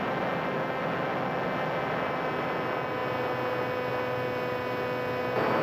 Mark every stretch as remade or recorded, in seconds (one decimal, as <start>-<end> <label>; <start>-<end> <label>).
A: 0.0-5.6 recorded